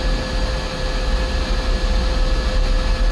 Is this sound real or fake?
real